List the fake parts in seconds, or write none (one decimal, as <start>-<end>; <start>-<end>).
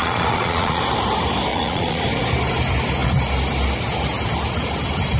0.0-0.8; 1.5-2.0